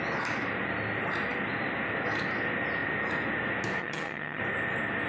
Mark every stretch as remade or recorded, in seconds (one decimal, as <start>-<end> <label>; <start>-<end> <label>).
0.0-3.8 recorded; 3.8-4.4 remade; 4.4-5.1 recorded